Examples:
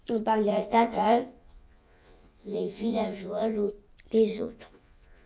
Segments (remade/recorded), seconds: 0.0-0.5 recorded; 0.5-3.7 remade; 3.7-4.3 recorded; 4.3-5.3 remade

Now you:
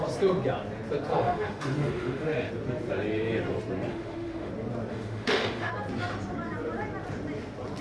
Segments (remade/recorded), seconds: 0.0-1.1 recorded; 1.1-2.5 remade; 2.5-3.9 recorded; 3.9-4.5 remade; 4.5-4.9 recorded; 4.9-5.7 remade; 5.7-7.8 recorded